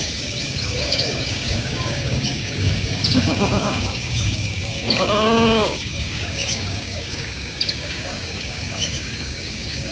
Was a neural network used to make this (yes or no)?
yes